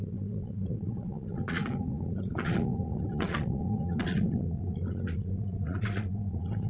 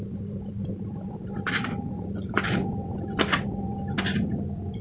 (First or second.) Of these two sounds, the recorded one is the second